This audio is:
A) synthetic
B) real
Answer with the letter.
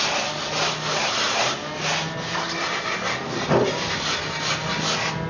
B